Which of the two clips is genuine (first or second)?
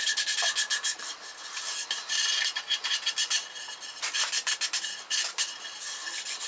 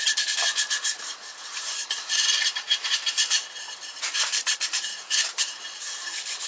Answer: first